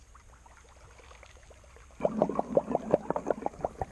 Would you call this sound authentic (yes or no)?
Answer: yes